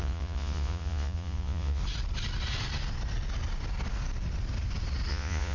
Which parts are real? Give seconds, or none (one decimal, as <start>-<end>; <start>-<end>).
1.8-5.1